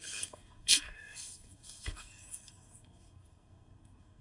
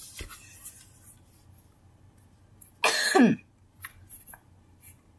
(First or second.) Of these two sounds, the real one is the second